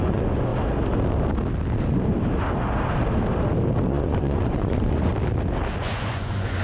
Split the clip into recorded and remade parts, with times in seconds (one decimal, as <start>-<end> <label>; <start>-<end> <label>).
0.0-0.5 remade; 0.5-3.9 recorded; 3.9-5.1 remade; 5.1-5.8 recorded; 5.8-6.6 remade